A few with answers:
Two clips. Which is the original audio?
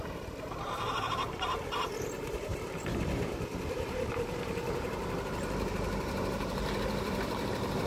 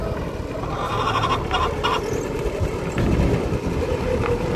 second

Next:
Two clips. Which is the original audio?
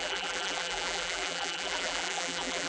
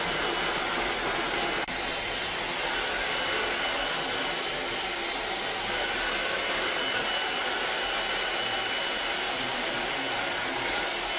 second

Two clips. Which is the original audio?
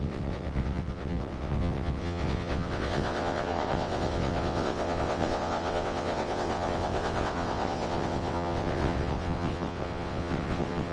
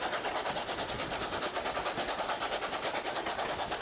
second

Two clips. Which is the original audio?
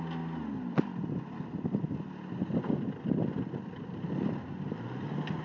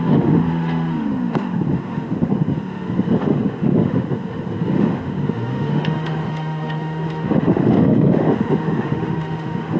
first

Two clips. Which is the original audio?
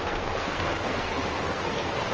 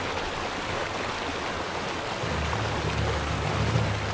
second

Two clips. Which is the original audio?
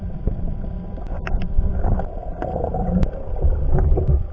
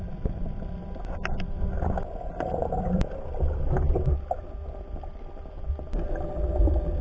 second